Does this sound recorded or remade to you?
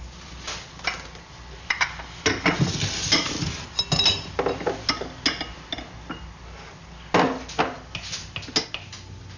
recorded